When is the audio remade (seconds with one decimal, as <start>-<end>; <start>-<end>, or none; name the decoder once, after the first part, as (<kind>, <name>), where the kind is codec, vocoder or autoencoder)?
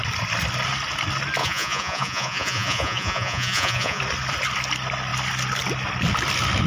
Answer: 1.4-4.0 (vocoder, Vocos)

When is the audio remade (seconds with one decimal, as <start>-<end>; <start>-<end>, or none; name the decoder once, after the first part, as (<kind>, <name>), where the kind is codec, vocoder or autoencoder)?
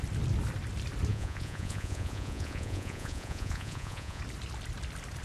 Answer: 1.1-4.2 (vocoder, Vocos)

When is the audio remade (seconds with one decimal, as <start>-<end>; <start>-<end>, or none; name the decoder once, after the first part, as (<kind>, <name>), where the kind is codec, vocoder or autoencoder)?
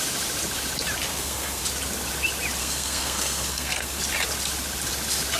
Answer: 1.1-1.6 (codec, SNAC); 2.6-4.0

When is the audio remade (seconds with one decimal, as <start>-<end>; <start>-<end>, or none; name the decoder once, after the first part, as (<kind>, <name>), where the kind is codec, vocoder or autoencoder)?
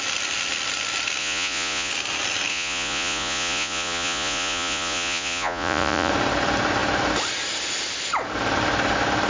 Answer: 1.2-1.9 (vocoder, Vocos); 2.5-6.1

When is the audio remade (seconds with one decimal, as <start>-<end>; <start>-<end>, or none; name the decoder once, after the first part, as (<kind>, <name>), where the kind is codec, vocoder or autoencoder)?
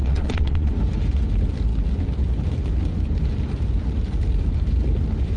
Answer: 0.0-0.7 (vocoder, Vocos)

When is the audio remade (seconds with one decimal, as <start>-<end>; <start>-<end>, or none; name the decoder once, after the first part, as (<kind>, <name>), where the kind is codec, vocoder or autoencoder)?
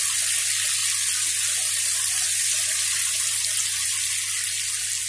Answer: none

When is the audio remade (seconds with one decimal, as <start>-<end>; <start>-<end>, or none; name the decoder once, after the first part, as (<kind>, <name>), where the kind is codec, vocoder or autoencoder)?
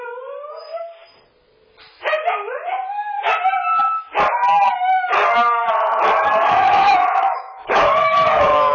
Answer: 6.5-8.7 (autoencoder, DAC-VAE)